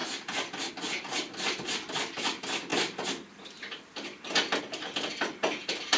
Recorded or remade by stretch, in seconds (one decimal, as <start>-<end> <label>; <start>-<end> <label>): 0.0-6.0 recorded